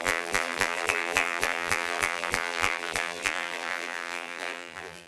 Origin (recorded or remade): remade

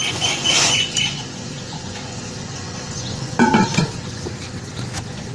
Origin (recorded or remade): remade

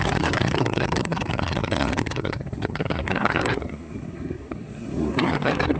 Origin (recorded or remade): remade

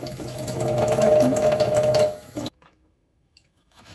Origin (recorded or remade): remade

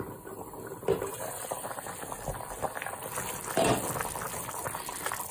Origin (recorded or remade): recorded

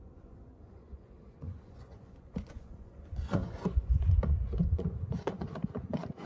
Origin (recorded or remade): remade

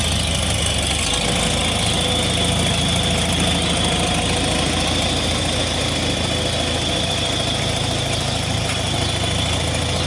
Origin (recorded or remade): recorded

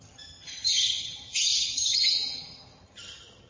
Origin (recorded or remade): remade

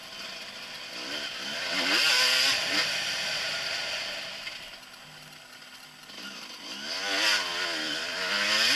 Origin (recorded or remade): recorded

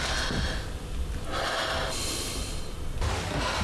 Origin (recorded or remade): recorded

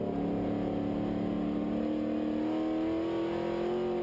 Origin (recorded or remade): recorded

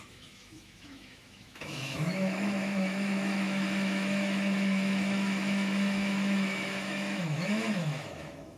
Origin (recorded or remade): remade